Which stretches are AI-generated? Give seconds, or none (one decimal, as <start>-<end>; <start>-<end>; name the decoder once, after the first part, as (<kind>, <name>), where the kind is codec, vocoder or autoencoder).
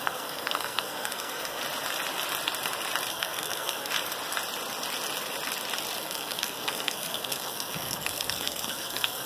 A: 0.0-1.6 (codec, SNAC); 3.1-3.9; 6.0-9.3